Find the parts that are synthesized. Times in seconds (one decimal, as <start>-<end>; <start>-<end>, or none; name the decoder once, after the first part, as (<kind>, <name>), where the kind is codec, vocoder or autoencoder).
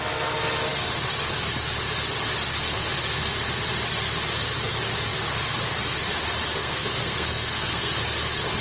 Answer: 6.6-7.9 (codec, SNAC)